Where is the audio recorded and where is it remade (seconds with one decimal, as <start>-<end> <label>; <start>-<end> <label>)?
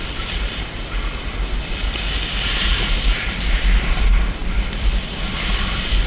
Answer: 0.0-4.4 recorded; 4.4-6.1 remade